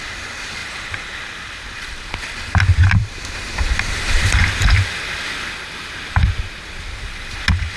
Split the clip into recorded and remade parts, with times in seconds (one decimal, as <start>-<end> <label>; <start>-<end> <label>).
0.0-0.6 recorded; 0.6-2.2 remade; 2.2-2.8 recorded; 2.8-4.2 remade; 4.2-7.8 recorded